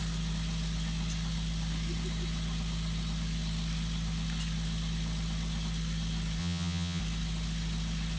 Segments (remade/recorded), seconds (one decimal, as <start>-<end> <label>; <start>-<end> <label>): 0.0-6.4 recorded; 6.4-7.0 remade; 7.0-8.2 recorded